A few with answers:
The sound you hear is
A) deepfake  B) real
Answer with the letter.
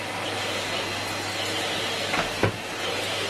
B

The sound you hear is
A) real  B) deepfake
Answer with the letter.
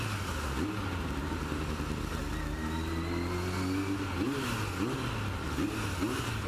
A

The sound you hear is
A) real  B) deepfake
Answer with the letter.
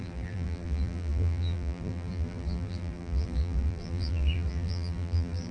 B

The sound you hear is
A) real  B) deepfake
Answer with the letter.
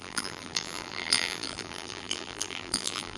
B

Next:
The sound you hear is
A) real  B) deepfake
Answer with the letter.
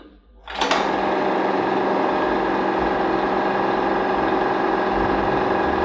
A